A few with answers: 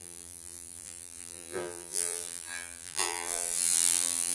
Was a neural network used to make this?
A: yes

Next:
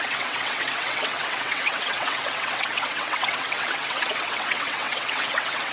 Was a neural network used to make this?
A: yes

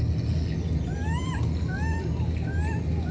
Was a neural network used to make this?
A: no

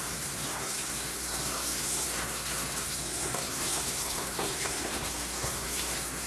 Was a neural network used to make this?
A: yes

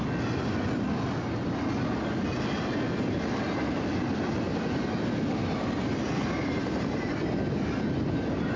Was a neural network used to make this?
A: no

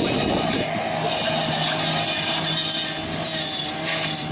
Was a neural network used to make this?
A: no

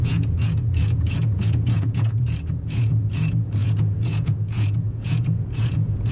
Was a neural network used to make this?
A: yes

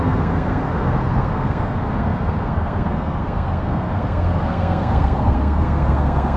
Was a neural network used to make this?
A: yes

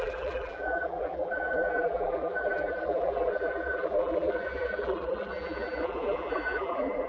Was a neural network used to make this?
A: yes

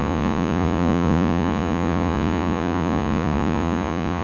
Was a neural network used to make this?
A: yes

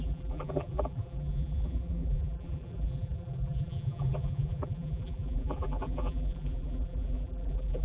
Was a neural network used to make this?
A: yes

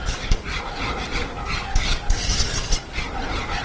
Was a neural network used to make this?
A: no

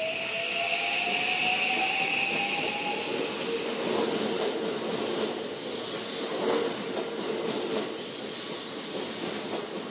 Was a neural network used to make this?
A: no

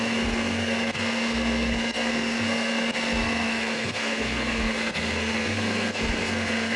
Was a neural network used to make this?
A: yes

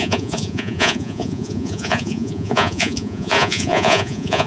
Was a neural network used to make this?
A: yes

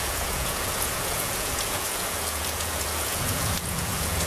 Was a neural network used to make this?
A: yes